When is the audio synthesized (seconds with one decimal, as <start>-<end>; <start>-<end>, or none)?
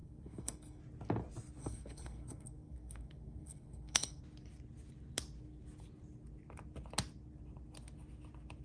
0.0-0.8; 1.6-4.2